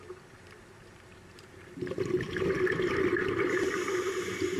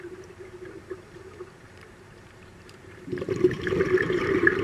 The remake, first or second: second